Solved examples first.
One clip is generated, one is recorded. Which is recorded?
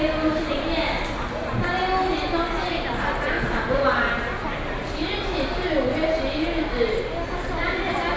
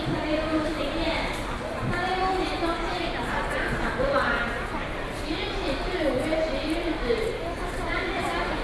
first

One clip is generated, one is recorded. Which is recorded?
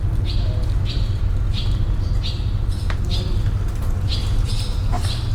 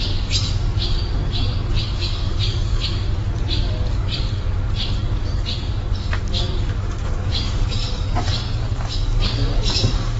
first